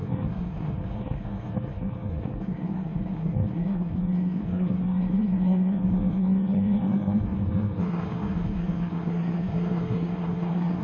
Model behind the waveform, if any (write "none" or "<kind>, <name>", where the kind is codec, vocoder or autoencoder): codec, SNAC